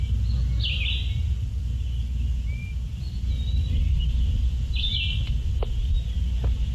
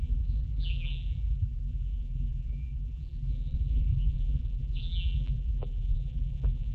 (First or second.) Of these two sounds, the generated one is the second